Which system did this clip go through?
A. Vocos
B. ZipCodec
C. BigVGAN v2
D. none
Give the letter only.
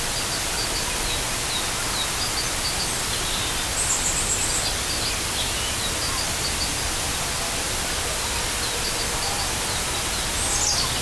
D